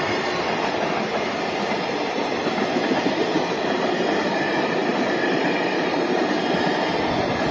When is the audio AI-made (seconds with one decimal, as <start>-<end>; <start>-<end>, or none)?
4.8-6.2